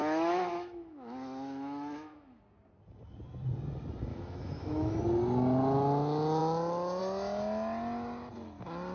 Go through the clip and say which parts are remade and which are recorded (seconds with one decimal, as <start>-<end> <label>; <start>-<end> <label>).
0.0-2.4 remade; 2.4-4.1 recorded; 4.1-5.0 remade; 5.0-8.9 recorded